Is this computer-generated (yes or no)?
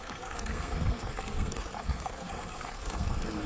yes